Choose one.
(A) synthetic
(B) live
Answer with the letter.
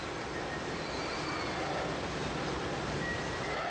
B